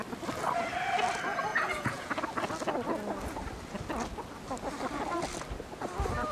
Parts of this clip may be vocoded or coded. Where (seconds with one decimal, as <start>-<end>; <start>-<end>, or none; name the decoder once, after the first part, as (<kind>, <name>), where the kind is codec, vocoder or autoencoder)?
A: 1.5-2.1 (vocoder, Vocos)